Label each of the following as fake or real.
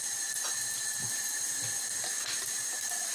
fake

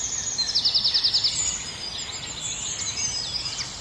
real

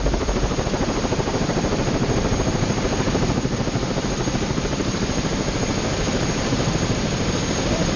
fake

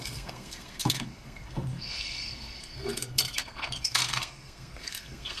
fake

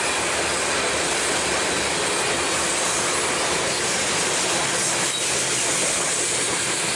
real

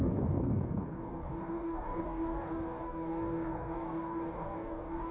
fake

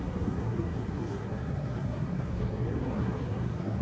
fake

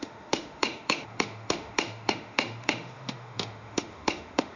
fake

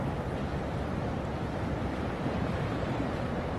fake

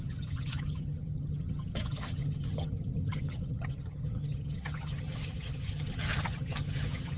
fake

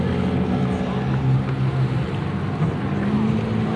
real